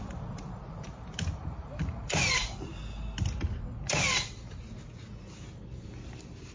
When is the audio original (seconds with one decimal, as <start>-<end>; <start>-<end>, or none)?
2.8-5.5